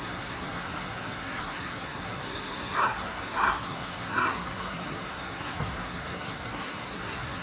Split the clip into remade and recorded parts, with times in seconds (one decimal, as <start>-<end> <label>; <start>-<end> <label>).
0.0-7.4 remade

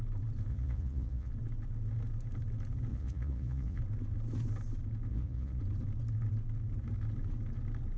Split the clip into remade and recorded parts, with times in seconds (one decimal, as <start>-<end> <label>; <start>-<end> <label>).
0.0-0.5 recorded; 0.5-1.3 remade; 1.3-2.9 recorded; 2.9-3.8 remade; 3.8-5.1 recorded; 5.1-5.6 remade; 5.6-8.0 recorded

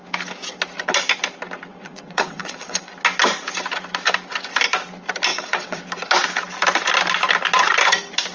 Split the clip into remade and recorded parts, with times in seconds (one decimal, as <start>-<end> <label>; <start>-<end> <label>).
0.0-1.7 recorded; 1.7-2.9 remade; 2.9-5.3 recorded; 5.3-5.8 remade; 5.8-8.3 recorded